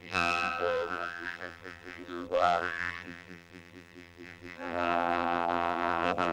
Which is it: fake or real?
fake